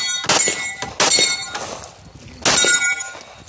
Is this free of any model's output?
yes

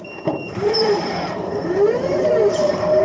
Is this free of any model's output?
no